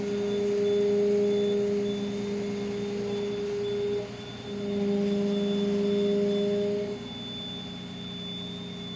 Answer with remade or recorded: recorded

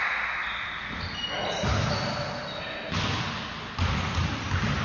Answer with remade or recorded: recorded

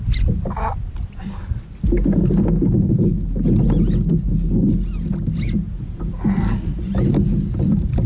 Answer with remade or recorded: recorded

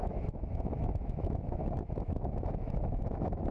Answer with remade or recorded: remade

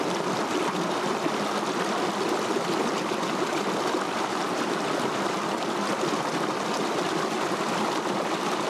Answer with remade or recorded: recorded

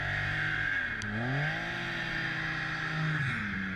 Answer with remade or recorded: recorded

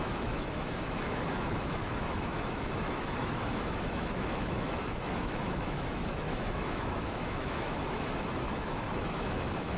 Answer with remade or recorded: remade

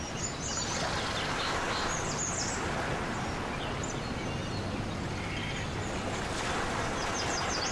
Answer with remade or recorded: recorded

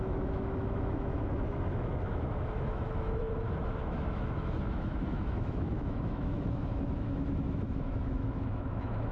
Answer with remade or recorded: remade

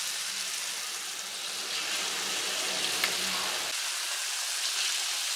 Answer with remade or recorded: recorded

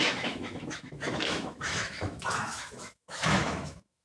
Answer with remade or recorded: remade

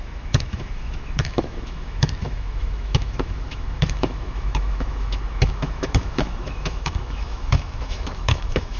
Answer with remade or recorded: remade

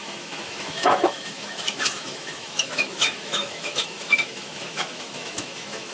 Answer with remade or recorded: remade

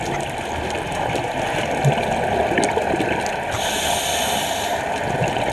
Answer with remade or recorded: recorded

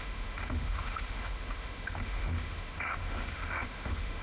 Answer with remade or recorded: remade